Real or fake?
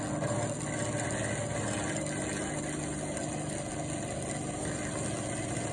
real